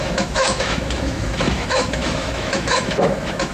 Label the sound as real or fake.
fake